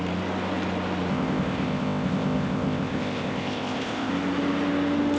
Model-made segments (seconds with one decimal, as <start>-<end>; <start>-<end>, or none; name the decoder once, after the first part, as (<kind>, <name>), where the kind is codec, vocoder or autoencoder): 1.1-4.1 (codec, ZipCodec)